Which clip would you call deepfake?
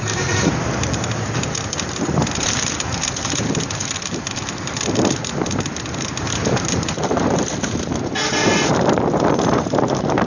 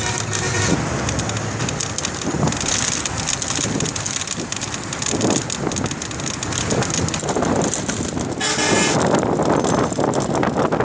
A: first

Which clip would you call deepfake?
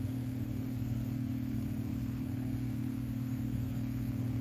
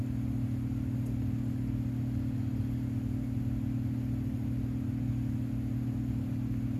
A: first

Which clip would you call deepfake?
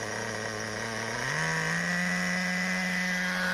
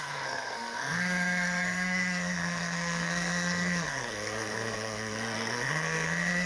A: second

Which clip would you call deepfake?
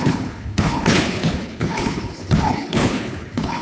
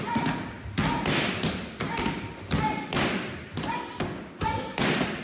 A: first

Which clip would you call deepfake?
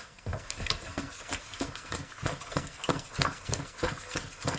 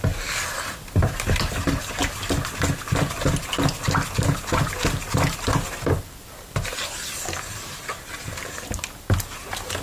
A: first